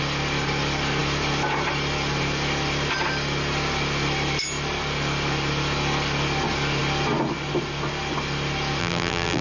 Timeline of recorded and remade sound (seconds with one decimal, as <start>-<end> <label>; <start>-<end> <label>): 0.0-8.8 recorded; 8.8-9.4 remade